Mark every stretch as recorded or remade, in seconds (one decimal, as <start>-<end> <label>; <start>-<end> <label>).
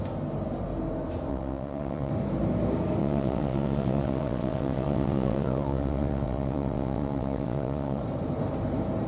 0.0-1.3 recorded; 1.3-2.1 remade; 2.1-3.0 recorded; 3.0-8.0 remade; 8.0-9.1 recorded